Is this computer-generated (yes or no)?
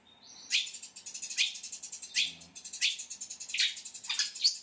no